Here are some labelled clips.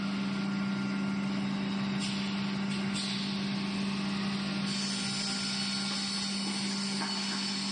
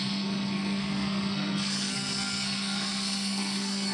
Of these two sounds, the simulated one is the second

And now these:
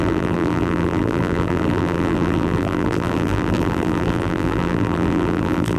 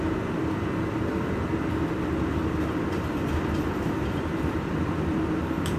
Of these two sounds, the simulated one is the first